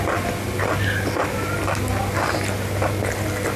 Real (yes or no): yes